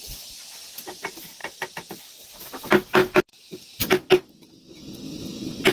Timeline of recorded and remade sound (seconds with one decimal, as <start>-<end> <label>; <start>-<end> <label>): 0.0-5.7 recorded